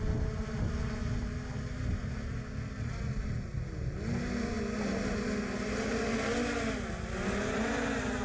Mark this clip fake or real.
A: real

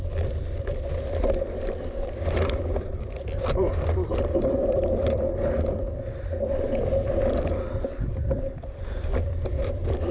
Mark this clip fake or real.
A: fake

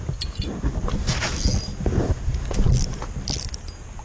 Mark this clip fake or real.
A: real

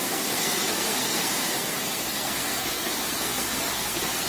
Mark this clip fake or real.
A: fake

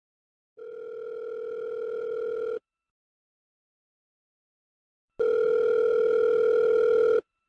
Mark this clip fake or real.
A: real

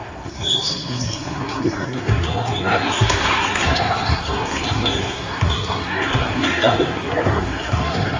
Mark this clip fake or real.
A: fake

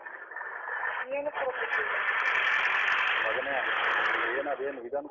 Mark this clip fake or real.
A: real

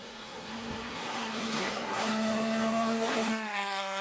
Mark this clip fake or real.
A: fake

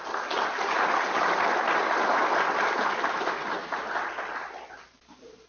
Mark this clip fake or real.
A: real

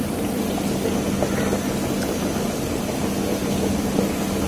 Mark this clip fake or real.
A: real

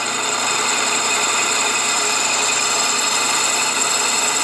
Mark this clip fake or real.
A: real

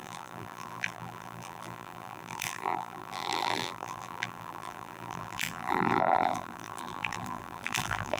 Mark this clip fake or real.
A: fake